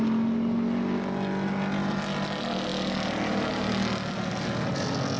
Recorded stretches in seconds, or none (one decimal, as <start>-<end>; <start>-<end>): 0.0-5.2